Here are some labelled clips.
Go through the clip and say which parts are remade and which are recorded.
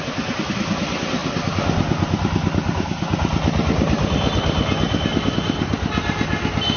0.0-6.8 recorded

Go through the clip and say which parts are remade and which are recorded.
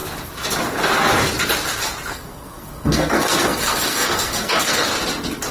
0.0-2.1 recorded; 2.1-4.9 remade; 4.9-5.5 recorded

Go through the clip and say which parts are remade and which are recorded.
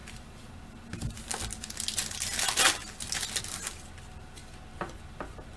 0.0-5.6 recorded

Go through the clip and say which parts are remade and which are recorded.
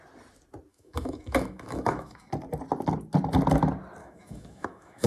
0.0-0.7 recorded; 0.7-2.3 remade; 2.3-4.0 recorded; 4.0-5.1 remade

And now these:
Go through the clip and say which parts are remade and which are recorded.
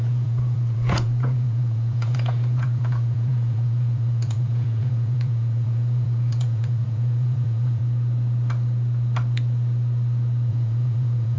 0.0-7.8 remade; 7.8-10.5 recorded; 10.5-11.4 remade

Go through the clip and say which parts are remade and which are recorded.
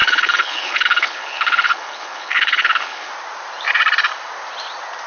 0.0-3.1 remade; 3.1-5.1 recorded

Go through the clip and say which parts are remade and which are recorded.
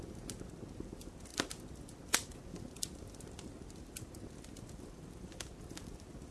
0.0-6.3 recorded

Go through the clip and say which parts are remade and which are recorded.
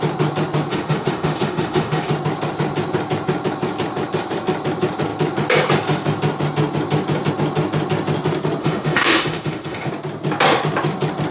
0.0-0.7 recorded; 0.7-2.1 remade; 2.1-8.6 recorded; 8.6-9.9 remade; 9.9-11.3 recorded